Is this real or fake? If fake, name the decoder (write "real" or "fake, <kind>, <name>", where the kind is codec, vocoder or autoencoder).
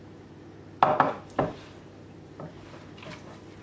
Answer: real